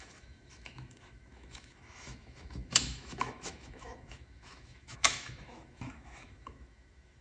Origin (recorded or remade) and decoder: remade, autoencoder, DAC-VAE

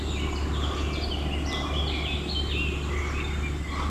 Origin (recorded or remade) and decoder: recorded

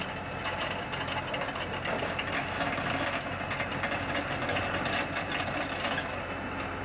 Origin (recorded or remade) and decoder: recorded